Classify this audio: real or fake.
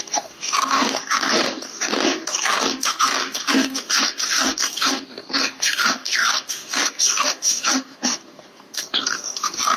fake